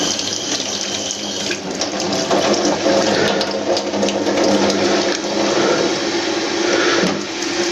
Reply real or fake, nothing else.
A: real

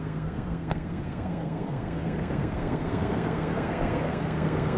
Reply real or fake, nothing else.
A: fake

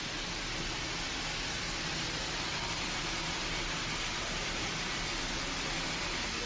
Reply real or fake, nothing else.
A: real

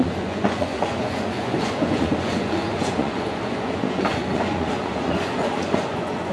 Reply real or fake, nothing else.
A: fake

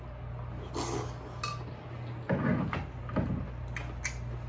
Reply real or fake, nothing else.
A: real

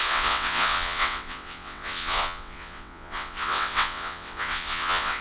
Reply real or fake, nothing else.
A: fake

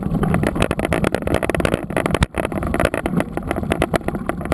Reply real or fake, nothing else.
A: real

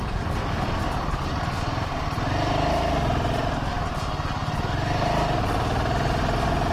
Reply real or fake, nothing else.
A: real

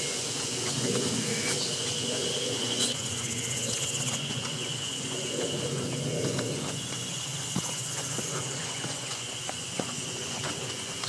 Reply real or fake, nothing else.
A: fake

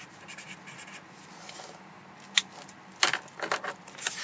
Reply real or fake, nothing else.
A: real